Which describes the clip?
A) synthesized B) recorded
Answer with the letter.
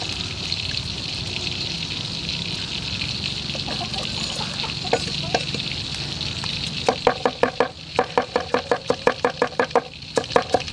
B